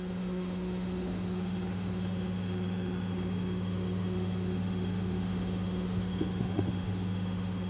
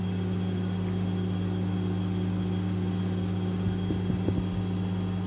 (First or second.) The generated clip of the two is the first